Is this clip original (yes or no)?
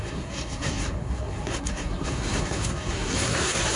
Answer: no